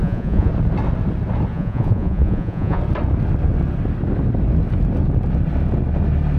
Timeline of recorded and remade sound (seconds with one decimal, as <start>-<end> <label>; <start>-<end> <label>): 0.0-0.5 remade; 0.5-1.5 recorded; 1.5-2.8 remade; 2.8-6.4 recorded